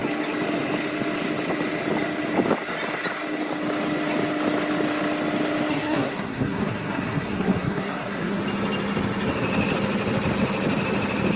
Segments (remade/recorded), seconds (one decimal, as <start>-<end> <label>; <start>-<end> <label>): 0.0-5.7 recorded; 5.7-8.4 remade; 8.4-11.4 recorded